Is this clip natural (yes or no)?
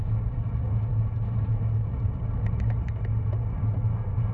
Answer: yes